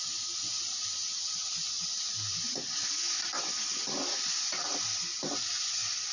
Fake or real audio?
real